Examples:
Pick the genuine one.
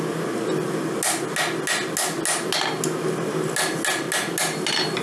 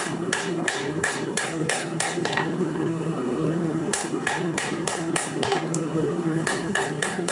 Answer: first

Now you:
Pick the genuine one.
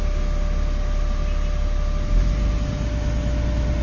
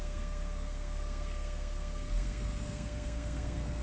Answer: first